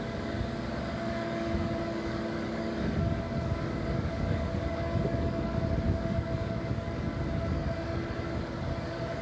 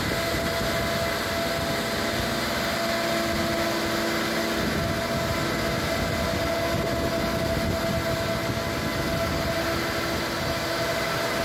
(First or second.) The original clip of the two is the second